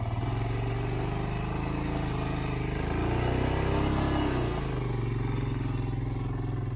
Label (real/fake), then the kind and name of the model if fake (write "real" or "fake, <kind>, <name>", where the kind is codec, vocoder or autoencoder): real